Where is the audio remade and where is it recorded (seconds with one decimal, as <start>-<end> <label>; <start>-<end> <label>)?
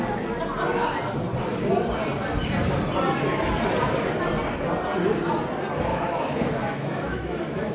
0.0-5.9 recorded; 5.9-7.7 remade